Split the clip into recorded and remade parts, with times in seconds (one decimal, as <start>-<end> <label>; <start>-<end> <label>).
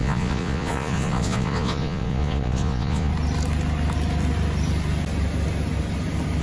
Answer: 0.0-3.1 remade; 3.1-6.4 recorded